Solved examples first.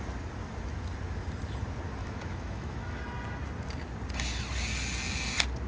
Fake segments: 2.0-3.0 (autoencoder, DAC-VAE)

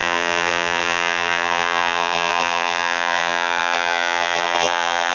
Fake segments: 0.0-5.1 (vocoder, BigVGAN v2)

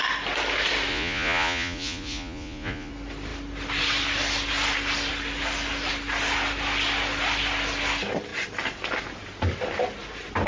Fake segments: 0.9-2.9 (vocoder, Vocos)

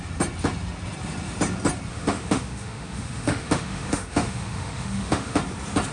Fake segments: 1.9-5.4 (autoencoder, DAC-VAE)